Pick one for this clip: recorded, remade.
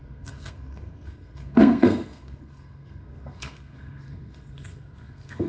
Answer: remade